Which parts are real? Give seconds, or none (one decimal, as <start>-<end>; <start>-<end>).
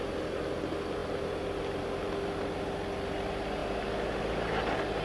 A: 0.0-5.0